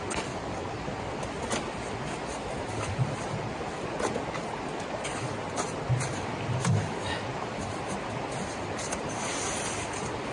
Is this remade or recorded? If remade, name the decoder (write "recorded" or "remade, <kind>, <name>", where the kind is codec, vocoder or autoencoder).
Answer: recorded